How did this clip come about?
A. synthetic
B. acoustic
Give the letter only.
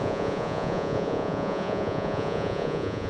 A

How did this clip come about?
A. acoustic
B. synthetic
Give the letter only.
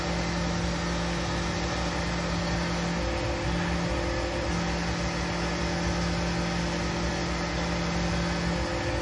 A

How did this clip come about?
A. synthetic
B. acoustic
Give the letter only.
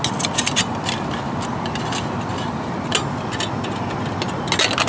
B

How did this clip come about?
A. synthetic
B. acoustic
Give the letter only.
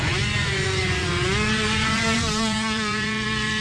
A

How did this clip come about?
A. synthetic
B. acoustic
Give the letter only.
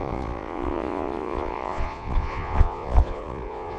A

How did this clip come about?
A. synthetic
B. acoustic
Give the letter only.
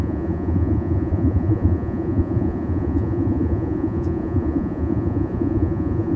A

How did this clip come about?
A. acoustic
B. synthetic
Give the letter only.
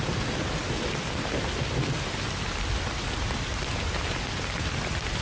A